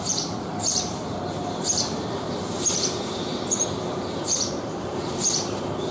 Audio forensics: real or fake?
fake